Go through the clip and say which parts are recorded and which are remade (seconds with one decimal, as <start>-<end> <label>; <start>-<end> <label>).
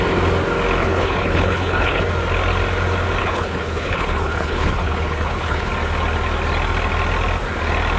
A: 0.0-0.8 recorded; 0.8-2.1 remade; 2.1-3.2 recorded; 3.2-5.7 remade; 5.7-8.0 recorded